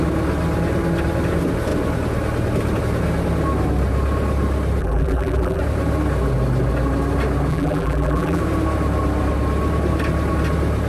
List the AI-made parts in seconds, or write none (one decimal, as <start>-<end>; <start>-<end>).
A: 4.8-5.6; 7.5-8.4